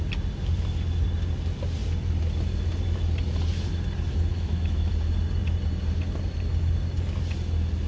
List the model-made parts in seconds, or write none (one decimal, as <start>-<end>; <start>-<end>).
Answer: 4.3-4.9